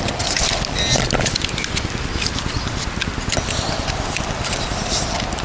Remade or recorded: recorded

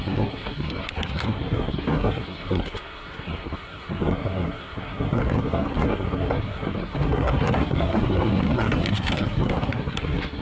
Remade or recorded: remade